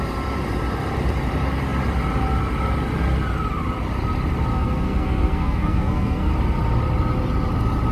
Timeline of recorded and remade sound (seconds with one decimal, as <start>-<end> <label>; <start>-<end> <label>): 0.0-4.5 recorded; 4.5-6.3 remade; 6.3-7.9 recorded